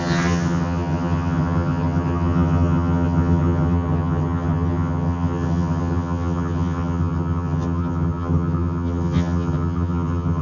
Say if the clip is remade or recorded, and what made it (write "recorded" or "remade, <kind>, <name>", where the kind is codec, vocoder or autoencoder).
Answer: remade, vocoder, HiFi-GAN